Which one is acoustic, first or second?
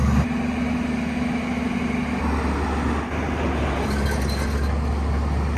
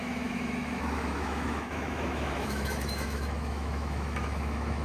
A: first